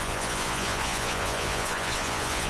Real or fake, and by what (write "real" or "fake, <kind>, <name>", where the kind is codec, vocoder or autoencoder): fake, vocoder, Vocos